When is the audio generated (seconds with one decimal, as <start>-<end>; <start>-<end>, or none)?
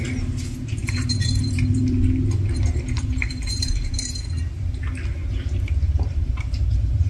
0.8-4.1; 5.2-7.1